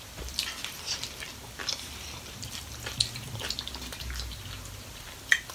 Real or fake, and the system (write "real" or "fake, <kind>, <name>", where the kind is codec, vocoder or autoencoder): fake, vocoder, BigVGAN v2